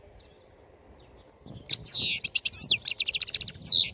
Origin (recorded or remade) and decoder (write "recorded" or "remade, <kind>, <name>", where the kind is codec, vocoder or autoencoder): recorded